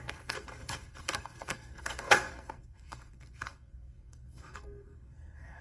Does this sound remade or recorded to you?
remade